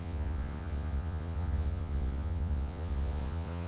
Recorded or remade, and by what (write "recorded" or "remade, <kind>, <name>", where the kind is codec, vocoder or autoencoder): remade, vocoder, Vocos